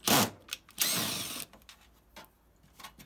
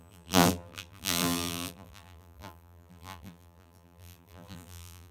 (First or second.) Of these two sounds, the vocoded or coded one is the second